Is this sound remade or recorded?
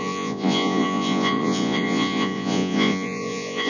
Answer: remade